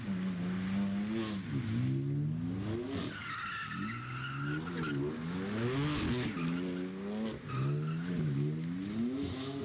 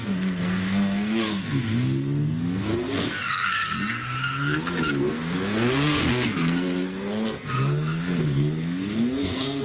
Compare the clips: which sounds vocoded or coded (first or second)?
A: second